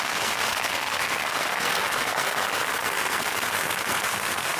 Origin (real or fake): fake